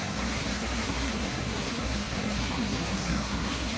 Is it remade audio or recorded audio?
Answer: remade